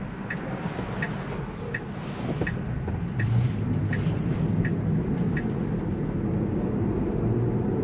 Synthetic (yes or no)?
no